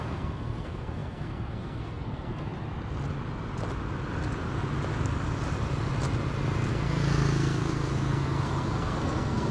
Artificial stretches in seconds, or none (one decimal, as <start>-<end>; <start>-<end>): 0.0-2.5; 6.7-9.5